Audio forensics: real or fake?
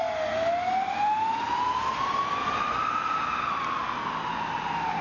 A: real